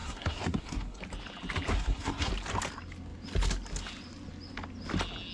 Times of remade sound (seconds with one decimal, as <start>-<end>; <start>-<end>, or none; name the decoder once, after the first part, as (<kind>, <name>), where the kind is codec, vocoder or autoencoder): 0.0-1.0 (codec, SNAC); 1.7-2.3